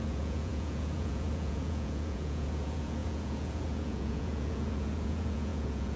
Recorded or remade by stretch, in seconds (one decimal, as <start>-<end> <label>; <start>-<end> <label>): 0.0-6.0 remade